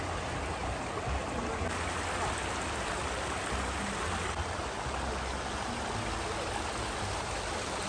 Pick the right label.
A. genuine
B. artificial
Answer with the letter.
A